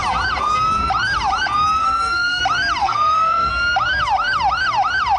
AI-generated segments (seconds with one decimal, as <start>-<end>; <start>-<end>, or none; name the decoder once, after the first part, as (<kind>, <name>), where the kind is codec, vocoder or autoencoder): 1.8-2.4 (codec, SNAC); 2.8-3.5